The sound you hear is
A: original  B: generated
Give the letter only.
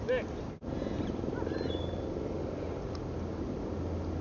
A